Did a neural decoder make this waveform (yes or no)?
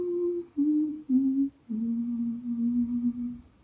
no